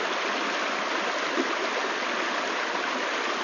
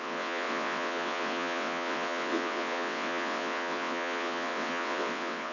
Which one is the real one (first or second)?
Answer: first